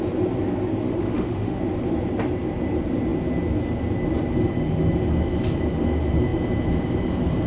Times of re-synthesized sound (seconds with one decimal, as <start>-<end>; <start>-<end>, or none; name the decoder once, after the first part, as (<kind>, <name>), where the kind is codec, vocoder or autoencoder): 0.8-1.6 (autoencoder, DAC-VAE)